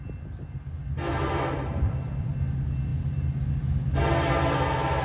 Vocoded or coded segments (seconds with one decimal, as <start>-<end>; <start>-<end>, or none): 1.1-2.3; 2.9-3.5